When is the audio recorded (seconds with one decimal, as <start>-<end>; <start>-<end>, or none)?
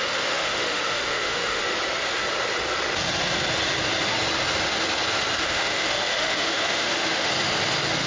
1.6-5.4; 7.3-8.1